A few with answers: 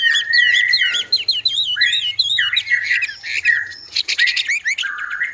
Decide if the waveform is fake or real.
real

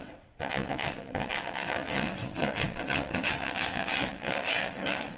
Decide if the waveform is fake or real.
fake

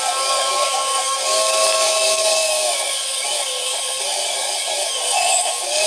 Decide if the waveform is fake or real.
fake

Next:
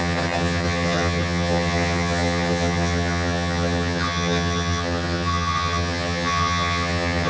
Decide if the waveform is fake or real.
fake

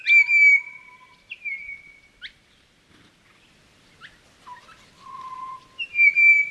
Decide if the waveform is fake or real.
real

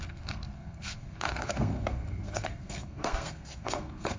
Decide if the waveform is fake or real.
fake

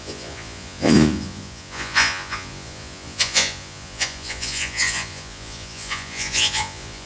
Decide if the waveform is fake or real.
fake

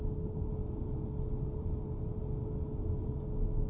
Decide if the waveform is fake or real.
real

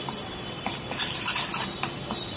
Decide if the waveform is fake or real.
real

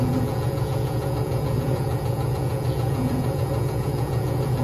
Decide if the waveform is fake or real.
fake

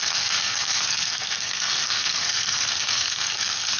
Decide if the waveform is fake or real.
fake